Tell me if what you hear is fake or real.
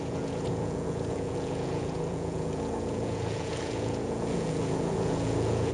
fake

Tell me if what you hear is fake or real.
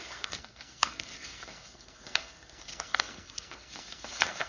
fake